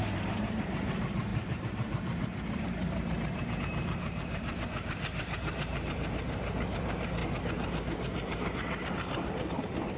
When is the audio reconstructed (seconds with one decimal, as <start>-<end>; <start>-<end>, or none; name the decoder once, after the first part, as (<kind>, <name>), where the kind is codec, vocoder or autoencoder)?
0.0-7.2 (vocoder, BigVGAN v2); 9.5-10.0